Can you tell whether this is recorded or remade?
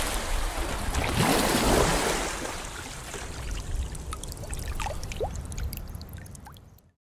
remade